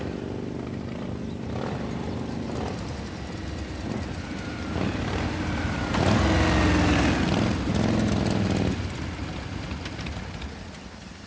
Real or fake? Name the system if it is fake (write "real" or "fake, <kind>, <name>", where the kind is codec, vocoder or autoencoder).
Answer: real